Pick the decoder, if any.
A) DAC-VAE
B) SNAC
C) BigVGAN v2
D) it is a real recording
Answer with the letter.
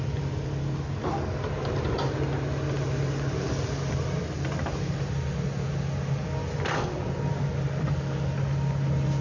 D